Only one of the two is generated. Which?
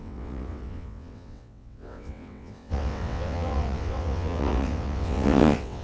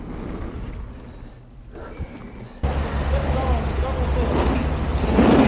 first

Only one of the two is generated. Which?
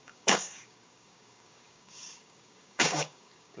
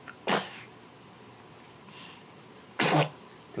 first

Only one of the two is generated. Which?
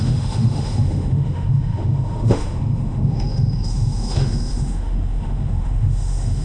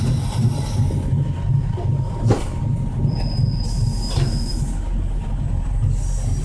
first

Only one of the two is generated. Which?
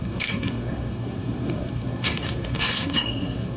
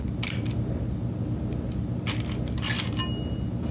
first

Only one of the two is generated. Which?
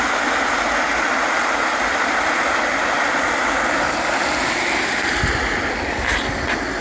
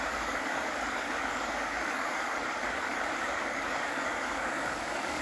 second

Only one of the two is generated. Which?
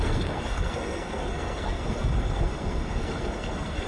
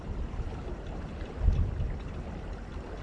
first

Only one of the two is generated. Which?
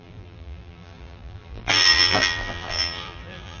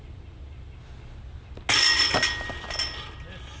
first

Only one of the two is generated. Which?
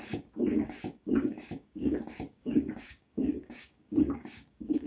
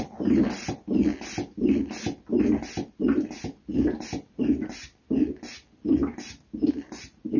first